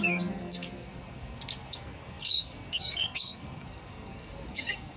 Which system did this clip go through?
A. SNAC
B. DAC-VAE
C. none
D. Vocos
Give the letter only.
A